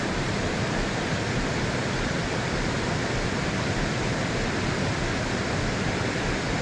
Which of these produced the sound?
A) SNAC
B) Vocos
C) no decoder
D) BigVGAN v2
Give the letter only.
C